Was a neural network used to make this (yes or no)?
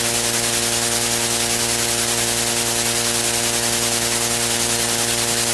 no